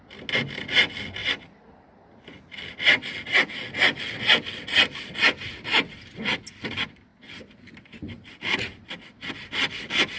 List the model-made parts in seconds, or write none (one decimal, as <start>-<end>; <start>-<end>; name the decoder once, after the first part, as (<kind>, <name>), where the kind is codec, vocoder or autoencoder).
none